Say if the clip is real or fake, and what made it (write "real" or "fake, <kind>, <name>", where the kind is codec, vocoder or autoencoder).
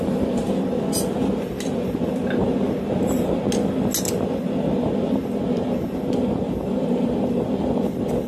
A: real